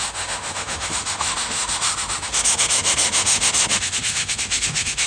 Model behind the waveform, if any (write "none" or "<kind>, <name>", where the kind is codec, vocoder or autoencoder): autoencoder, DAC-VAE